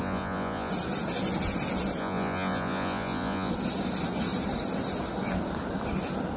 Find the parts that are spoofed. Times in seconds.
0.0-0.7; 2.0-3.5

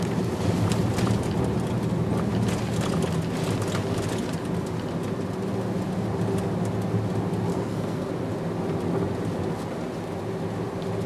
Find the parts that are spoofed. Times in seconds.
7.5-8.1

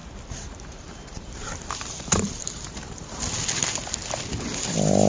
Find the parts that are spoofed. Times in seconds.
0.0-3.1

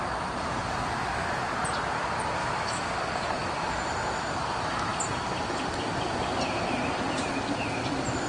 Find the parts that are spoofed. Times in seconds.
2.4-3.0

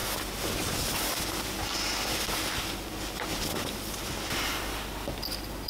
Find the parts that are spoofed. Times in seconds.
none

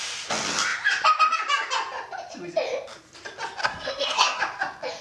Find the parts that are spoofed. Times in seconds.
3.6-4.4

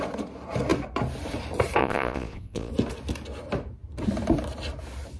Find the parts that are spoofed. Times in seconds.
1.8-2.7